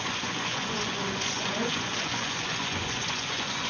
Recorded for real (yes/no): no